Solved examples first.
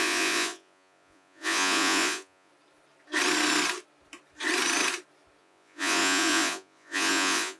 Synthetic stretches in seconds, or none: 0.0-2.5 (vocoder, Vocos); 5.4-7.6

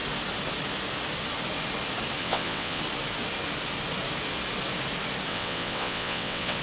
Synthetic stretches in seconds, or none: 2.2-2.8 (vocoder, WaveNeXt); 5.3-6.6

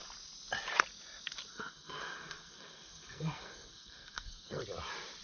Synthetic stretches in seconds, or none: 1.5-4.6 (codec, SNAC)

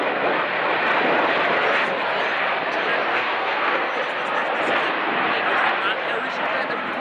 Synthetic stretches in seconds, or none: 3.1-3.9 (codec, SNAC)

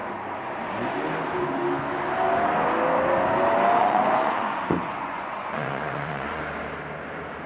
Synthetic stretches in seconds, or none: 3.8-6.4 (vocoder, Vocos)